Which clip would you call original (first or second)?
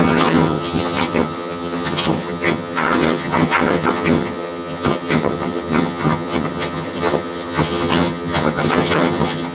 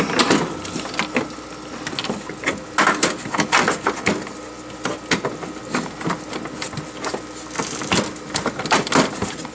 second